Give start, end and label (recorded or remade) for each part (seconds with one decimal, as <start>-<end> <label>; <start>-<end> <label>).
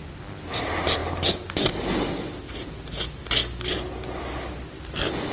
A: 0.0-5.3 recorded